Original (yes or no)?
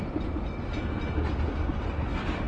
yes